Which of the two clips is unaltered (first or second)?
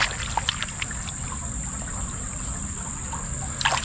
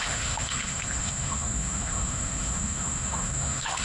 first